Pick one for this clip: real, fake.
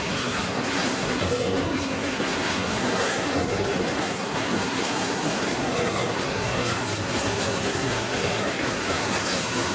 fake